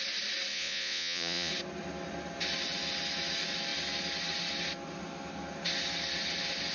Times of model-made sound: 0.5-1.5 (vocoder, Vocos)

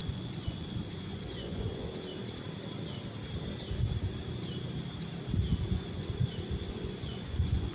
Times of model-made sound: 0.0-1.9 (vocoder, Vocos); 5.7-7.7

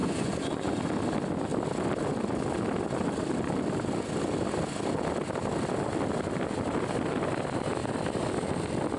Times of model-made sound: 0.0-0.7 (vocoder, Vocos)

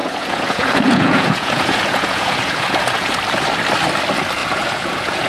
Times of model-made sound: 0.0-3.2 (vocoder, Vocos); 4.4-5.3